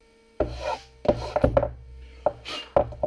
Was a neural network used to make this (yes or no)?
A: no